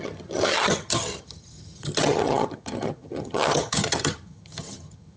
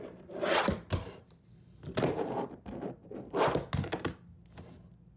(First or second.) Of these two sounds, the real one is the second